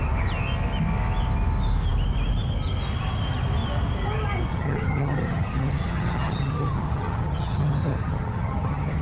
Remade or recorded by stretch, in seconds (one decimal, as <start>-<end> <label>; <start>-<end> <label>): 0.0-4.5 recorded; 4.5-9.0 remade